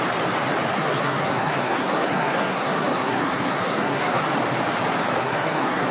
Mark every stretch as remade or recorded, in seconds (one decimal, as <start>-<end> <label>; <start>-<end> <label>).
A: 0.0-0.7 recorded; 0.7-4.2 remade; 4.2-5.2 recorded; 5.2-5.9 remade